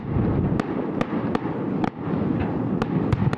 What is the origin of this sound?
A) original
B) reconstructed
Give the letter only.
A